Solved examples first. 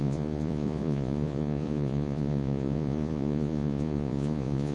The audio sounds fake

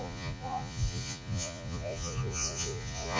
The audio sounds fake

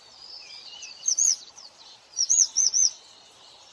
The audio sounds fake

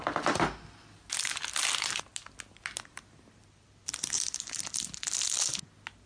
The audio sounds real